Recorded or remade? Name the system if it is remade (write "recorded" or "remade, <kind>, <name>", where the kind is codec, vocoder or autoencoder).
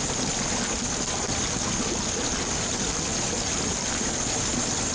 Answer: recorded